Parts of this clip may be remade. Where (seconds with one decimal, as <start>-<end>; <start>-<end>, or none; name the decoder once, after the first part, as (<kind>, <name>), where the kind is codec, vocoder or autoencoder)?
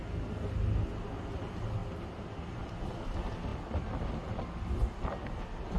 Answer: none